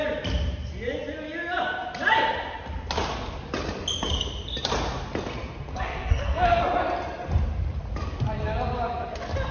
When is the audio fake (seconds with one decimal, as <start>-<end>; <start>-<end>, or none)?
5.7-6.6